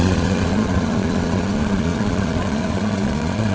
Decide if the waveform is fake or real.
fake